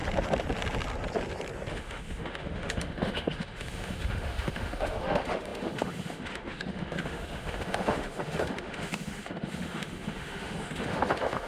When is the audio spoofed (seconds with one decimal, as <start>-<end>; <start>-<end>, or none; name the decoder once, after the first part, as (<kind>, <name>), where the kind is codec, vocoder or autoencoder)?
1.7-11.5 (autoencoder, DAC-VAE)